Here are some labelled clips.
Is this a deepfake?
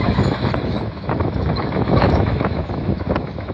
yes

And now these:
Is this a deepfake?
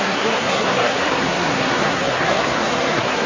yes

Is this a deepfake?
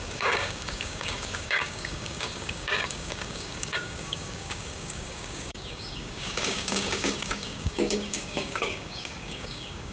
yes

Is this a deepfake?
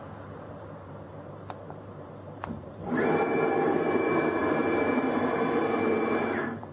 yes